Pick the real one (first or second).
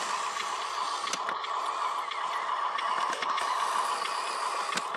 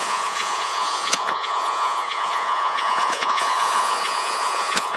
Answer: first